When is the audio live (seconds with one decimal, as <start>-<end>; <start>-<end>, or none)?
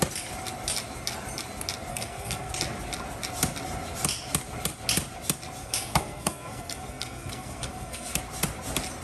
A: 0.0-1.9; 2.5-5.6; 8.2-9.0